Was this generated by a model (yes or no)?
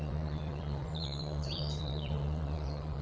yes